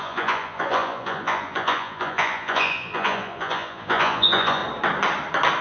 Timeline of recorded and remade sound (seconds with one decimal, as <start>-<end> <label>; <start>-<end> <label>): 0.0-4.6 remade; 4.6-5.6 recorded